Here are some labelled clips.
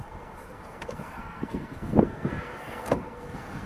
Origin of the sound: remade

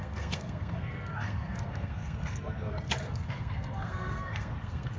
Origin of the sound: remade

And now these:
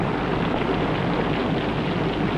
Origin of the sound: recorded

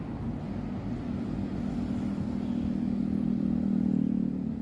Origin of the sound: recorded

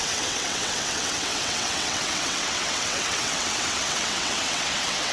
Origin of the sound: remade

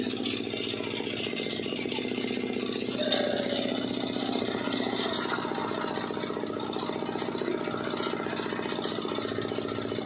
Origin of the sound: recorded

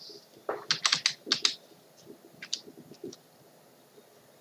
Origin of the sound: recorded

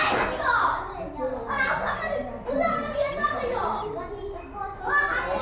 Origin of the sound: recorded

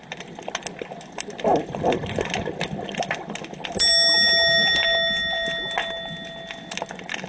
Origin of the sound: recorded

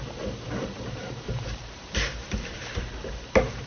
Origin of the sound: remade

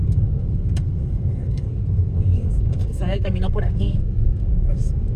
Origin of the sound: remade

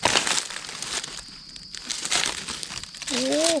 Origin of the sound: recorded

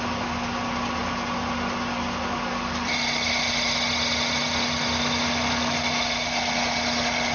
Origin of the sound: recorded